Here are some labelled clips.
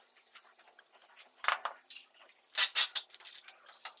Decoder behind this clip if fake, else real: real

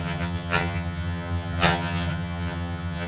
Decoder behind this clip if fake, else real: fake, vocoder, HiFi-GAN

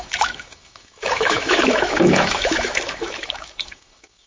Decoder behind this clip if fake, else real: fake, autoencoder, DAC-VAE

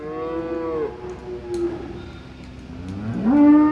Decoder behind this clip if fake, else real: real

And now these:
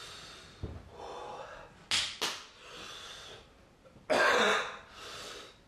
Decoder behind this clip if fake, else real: real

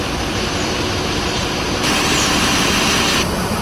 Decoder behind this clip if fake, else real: real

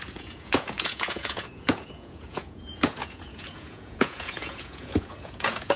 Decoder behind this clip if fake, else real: fake, vocoder, Vocos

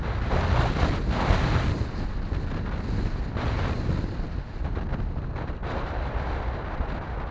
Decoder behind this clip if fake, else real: real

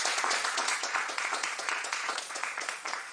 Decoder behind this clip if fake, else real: fake, vocoder, Vocos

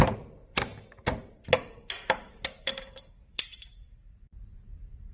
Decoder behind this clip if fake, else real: fake, vocoder, BigVGAN v2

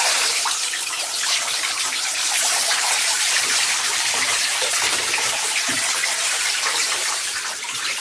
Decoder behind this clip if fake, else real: fake, vocoder, BigVGAN v2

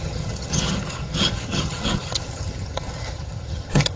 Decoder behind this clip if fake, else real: fake, vocoder, HiFi-GAN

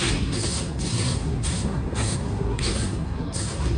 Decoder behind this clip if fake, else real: fake, codec, SNAC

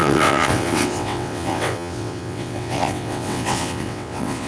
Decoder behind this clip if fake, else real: fake, vocoder, WaveNeXt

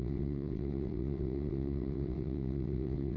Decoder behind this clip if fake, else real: fake, vocoder, WaveNeXt